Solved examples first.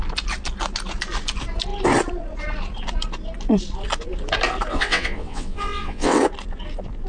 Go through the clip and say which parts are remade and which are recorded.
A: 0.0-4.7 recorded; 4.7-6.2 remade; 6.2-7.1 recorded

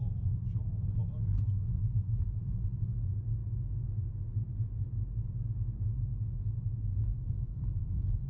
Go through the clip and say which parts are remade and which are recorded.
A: 0.0-1.0 remade; 1.0-1.6 recorded; 1.6-8.3 remade

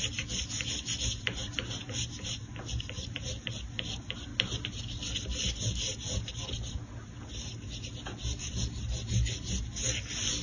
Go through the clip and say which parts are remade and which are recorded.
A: 0.0-10.4 recorded

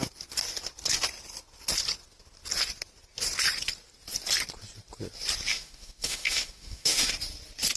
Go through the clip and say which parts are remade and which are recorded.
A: 0.0-5.5 recorded; 5.5-7.1 remade; 7.1-7.8 recorded

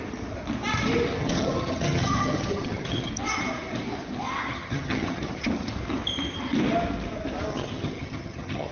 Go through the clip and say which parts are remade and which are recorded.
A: 0.0-1.2 recorded; 1.2-3.1 remade; 3.1-4.5 recorded; 4.5-5.5 remade; 5.5-7.5 recorded; 7.5-8.7 remade

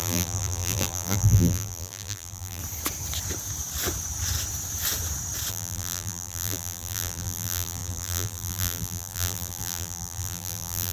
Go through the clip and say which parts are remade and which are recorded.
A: 0.0-2.6 remade; 2.6-5.5 recorded; 5.5-10.9 remade

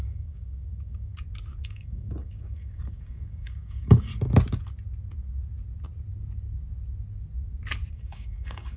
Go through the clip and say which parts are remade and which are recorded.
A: 0.0-1.1 remade; 1.1-1.6 recorded; 1.6-4.1 remade; 4.1-7.9 recorded; 7.9-8.8 remade

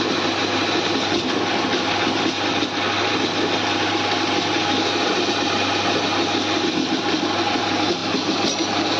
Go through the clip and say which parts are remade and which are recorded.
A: 0.0-9.0 recorded